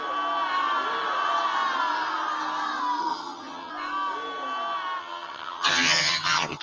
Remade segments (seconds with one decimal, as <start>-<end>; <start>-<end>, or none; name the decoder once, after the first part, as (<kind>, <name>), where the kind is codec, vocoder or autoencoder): 3.0-3.7 (vocoder, HiFi-GAN); 5.0-6.6